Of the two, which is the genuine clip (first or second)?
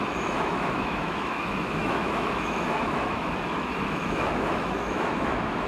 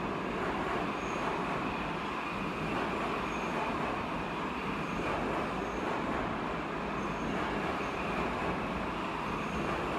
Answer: second